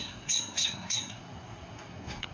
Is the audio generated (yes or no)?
yes